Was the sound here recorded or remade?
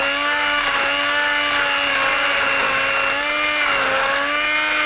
recorded